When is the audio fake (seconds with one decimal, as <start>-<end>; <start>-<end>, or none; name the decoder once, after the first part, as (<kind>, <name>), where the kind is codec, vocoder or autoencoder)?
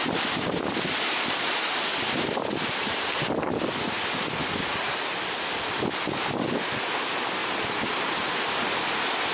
7.4-8.4 (vocoder, BigVGAN v2)